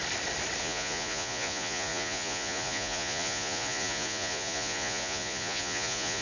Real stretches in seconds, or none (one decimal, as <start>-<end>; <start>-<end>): 0.0-0.6